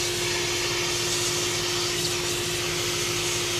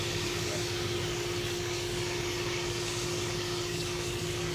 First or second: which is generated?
second